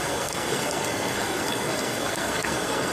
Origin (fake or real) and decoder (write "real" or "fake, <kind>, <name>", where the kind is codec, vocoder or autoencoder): fake, codec, SNAC